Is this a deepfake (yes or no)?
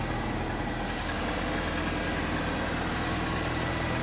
no